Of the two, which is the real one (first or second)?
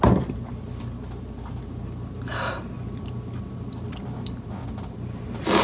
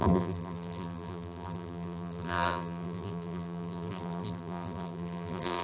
first